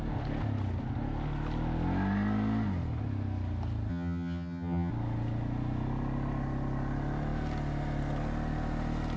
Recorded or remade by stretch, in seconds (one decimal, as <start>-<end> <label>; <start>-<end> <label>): 0.0-3.9 recorded; 3.9-4.9 remade; 4.9-9.2 recorded